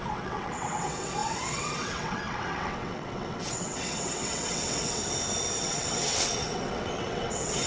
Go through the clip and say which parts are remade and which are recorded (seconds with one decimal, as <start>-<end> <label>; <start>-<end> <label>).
0.0-5.0 remade; 5.0-5.6 recorded; 5.6-7.7 remade